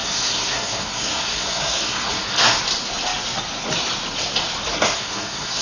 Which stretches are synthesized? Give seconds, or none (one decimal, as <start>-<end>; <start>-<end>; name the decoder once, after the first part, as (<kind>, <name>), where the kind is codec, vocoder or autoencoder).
0.0-2.6 (codec, SNAC); 4.7-5.6